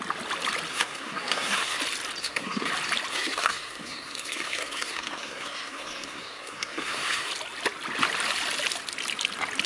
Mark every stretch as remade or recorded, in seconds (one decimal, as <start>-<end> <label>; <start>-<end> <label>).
0.0-0.7 recorded; 0.7-1.8 remade; 1.8-2.2 recorded; 2.2-2.7 remade; 2.7-3.1 recorded; 3.1-7.3 remade; 7.3-9.7 recorded